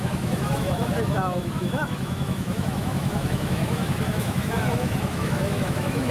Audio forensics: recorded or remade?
remade